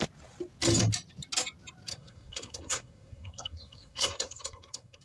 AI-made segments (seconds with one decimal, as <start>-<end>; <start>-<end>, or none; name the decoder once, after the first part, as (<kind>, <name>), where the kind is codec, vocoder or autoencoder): 1.9-5.0 (codec, SNAC)